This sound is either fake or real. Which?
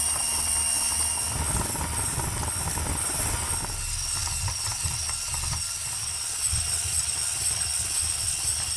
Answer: real